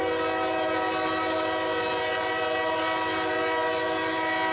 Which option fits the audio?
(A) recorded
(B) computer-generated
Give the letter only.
A